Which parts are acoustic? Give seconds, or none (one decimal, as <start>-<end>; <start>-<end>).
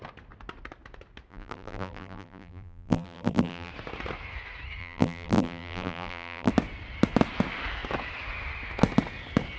0.0-1.3; 3.7-4.8; 6.5-9.6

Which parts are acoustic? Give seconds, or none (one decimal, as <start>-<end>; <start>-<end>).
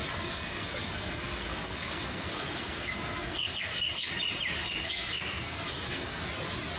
4.1-4.6; 6.3-6.8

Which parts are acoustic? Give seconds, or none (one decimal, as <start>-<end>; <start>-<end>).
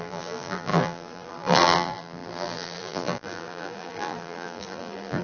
none